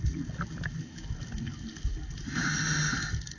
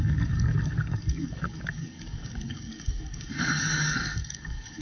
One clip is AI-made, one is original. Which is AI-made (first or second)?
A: second